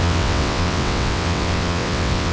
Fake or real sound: fake